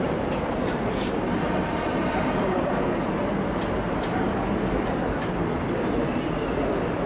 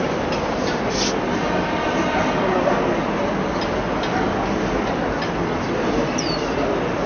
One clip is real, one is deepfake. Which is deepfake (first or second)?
first